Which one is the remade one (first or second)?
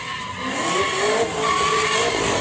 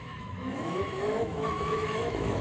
second